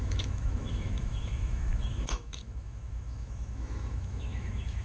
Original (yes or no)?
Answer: no